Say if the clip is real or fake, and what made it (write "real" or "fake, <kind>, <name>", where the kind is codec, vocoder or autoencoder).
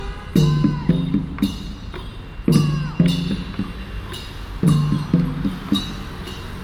real